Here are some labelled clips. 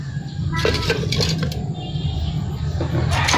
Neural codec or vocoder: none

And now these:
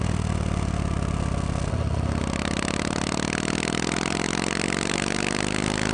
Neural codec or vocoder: none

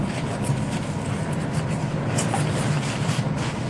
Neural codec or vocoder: none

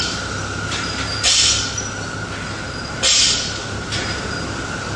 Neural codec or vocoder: none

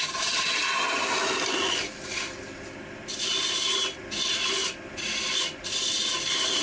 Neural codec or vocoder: none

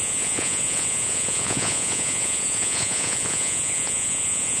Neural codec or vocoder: vocoder, Vocos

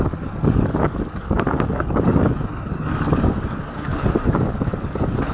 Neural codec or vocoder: codec, DAC